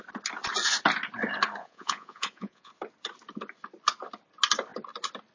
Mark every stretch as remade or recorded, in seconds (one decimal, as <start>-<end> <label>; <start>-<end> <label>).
0.0-1.6 recorded; 1.6-2.7 remade; 2.7-5.3 recorded